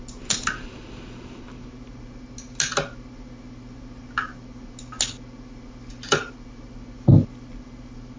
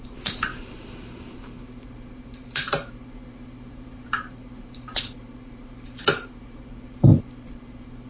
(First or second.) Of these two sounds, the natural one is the first